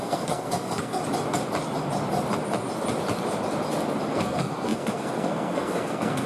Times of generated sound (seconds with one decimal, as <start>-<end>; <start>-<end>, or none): 0.0-1.0; 4.1-6.3